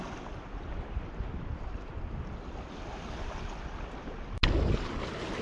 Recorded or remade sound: recorded